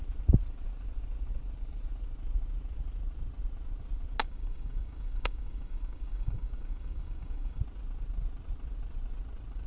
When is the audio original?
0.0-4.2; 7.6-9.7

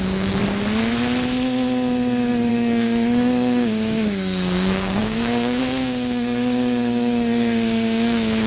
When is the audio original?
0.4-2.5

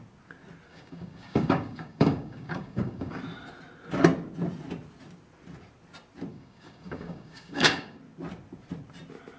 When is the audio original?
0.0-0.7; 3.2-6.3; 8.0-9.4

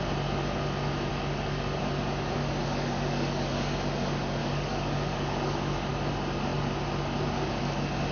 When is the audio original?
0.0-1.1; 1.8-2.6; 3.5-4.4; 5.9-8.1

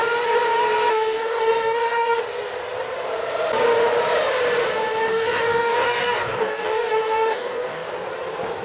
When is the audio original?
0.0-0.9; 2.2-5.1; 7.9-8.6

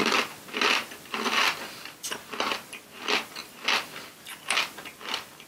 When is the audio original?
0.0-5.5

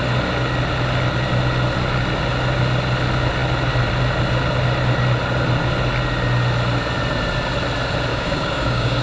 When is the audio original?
0.0-8.1

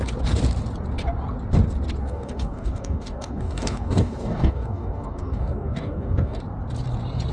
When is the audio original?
0.0-2.0; 6.4-7.3